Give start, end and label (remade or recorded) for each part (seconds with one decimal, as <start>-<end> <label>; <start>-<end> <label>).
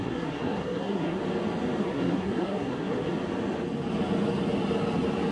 0.0-1.2 remade; 1.2-1.8 recorded; 1.8-3.1 remade; 3.1-5.3 recorded